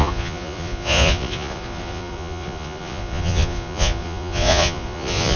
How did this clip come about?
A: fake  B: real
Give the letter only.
A